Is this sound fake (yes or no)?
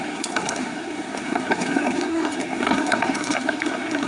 yes